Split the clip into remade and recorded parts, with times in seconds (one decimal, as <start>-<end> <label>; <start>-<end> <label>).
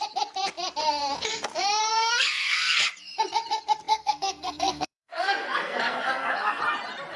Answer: 0.0-1.8 recorded; 1.8-2.8 remade; 2.8-3.9 recorded; 3.9-6.6 remade; 6.6-7.2 recorded